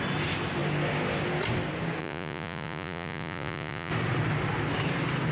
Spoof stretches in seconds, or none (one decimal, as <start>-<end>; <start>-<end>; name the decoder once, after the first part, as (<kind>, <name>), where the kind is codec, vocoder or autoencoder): 2.0-3.9 (vocoder, Vocos)

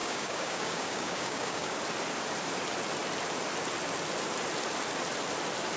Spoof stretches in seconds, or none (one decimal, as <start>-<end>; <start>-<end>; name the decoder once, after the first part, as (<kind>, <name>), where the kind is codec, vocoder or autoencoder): 0.0-1.8 (codec, DAC)

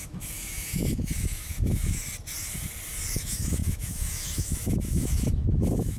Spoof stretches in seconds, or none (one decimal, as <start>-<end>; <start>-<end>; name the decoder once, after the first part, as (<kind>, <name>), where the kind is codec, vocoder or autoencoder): 0.0-2.0 (autoencoder, DAC-VAE); 3.2-6.0

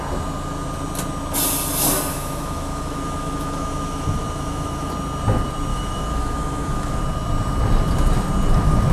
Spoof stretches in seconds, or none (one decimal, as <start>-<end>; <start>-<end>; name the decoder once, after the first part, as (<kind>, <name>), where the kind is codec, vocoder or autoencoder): 2.1-4.9 (autoencoder, DAC-VAE); 5.7-7.0

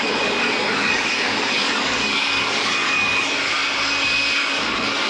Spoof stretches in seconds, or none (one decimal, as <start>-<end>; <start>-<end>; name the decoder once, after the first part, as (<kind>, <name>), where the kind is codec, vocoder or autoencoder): 0.0-3.6 (codec, DAC); 4.4-5.1

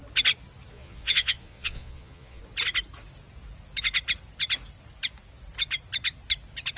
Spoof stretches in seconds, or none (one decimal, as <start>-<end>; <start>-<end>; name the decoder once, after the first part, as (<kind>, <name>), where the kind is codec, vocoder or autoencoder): 0.7-2.4 (vocoder, Vocos)

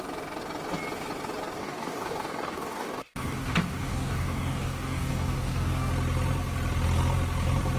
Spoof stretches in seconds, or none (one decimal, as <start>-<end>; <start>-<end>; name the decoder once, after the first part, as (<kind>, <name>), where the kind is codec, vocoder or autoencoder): 1.6-5.9 (codec, DAC)